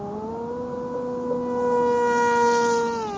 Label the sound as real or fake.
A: real